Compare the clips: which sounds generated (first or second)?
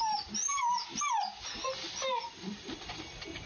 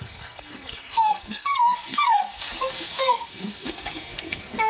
second